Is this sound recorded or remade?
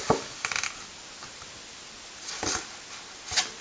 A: recorded